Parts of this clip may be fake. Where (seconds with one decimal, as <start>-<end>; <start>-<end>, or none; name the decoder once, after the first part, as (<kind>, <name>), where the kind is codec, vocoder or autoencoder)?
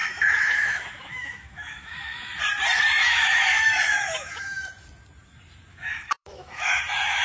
0.0-2.3 (autoencoder, DAC-VAE); 3.0-4.7; 5.7-6.8